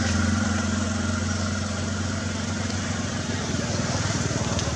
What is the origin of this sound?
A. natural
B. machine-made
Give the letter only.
B